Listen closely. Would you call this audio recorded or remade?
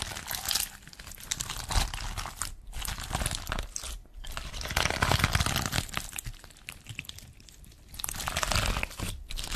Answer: recorded